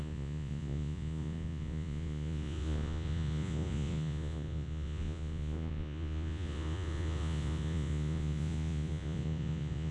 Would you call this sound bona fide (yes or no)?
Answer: no